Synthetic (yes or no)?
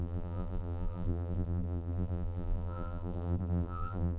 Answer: yes